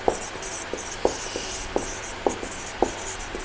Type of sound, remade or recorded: remade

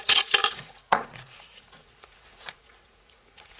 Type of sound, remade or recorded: remade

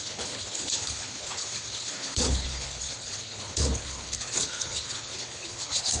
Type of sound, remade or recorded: remade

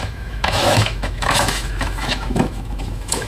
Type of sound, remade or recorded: remade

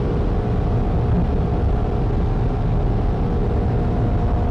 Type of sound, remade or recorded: recorded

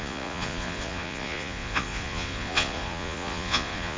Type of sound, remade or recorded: remade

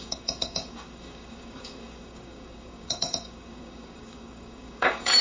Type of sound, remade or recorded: remade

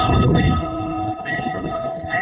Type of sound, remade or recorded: remade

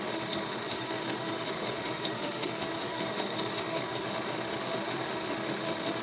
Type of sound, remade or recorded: remade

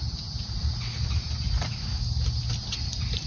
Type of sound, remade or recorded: recorded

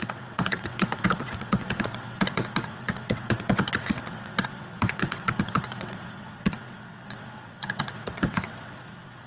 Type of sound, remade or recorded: remade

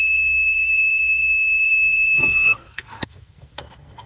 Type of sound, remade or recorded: remade